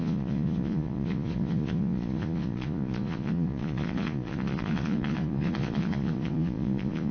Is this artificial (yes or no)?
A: yes